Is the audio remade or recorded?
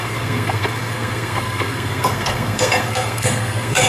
remade